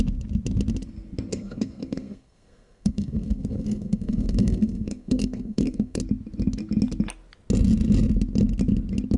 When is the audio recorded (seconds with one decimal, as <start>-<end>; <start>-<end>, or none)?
0.0-1.3; 6.0-9.2